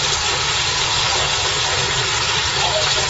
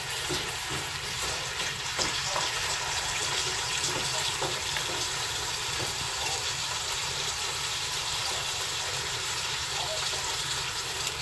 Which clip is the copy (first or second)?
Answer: second